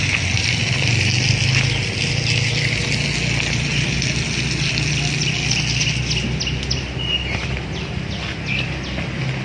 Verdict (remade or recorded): recorded